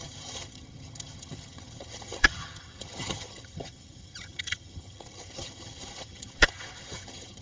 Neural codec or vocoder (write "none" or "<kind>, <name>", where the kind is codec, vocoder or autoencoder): vocoder, HiFi-GAN